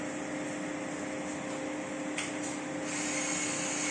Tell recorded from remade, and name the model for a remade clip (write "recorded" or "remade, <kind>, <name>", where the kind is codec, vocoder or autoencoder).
recorded